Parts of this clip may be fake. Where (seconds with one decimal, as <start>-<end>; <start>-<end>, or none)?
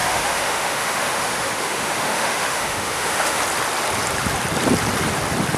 0.0-3.4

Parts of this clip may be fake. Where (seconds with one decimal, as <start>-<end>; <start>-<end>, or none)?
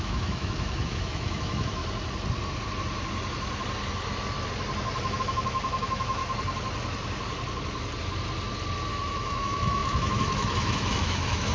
0.0-1.8; 5.2-6.2; 8.9-11.5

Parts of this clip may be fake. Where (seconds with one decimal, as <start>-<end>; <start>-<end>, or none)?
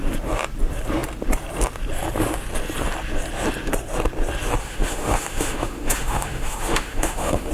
4.6-7.5